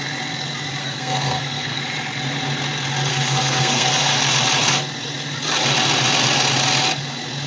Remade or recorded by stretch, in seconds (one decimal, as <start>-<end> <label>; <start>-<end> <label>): 0.0-0.8 recorded; 0.8-1.8 remade; 1.8-3.1 recorded; 3.1-4.1 remade; 4.1-7.5 recorded